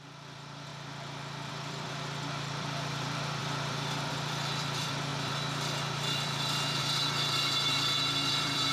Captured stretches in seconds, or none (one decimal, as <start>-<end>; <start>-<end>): 0.7-1.5